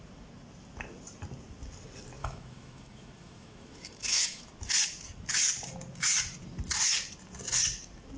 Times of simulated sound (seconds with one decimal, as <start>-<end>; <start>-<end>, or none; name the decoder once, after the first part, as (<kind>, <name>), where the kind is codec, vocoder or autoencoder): 2.2-4.5 (autoencoder, DAC-VAE)